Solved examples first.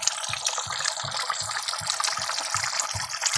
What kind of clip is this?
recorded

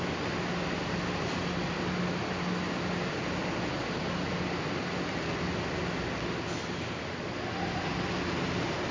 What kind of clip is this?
recorded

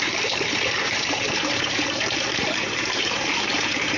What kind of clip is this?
remade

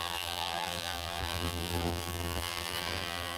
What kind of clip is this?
remade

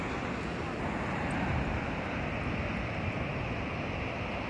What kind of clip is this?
recorded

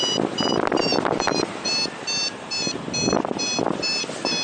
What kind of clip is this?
recorded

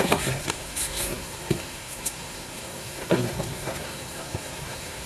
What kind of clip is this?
remade